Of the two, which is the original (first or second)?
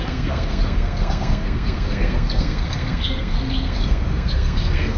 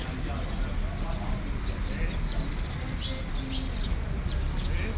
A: second